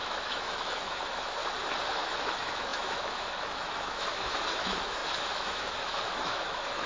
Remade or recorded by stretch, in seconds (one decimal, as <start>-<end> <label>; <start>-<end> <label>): 0.0-1.4 remade; 1.4-1.9 recorded; 1.9-6.9 remade